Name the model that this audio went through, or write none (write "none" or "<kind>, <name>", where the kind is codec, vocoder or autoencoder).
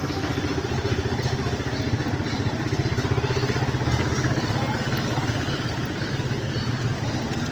none